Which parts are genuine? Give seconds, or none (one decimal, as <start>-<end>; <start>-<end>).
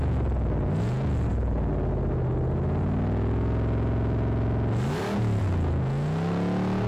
0.0-6.9